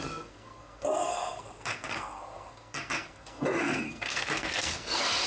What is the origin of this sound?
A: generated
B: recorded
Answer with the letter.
A